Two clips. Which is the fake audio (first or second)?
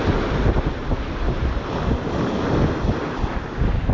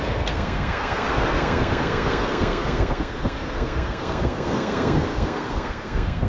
second